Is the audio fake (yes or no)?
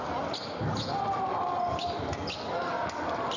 no